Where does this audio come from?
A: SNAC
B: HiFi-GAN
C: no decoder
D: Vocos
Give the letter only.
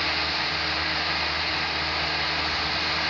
C